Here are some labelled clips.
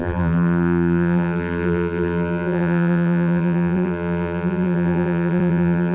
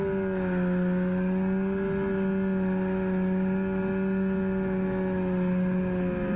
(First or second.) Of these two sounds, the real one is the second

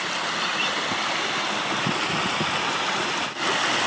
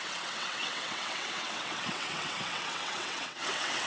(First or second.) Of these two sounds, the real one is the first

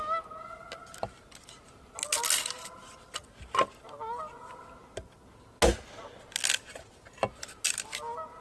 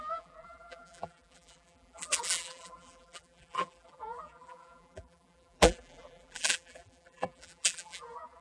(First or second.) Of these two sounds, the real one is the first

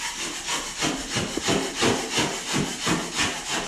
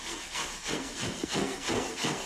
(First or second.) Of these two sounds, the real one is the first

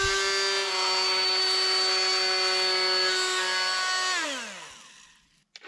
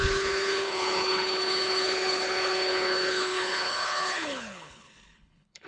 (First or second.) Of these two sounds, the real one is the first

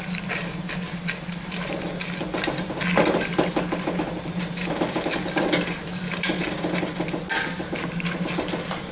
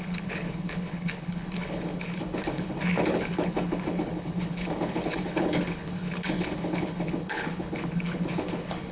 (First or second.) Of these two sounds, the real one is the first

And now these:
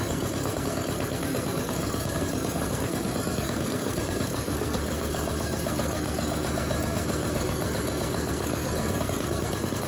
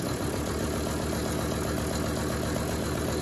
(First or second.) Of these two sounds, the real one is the second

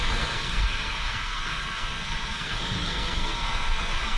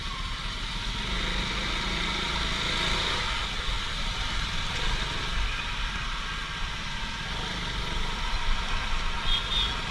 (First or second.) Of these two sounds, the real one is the second